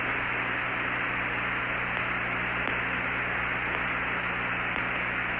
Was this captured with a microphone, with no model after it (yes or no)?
yes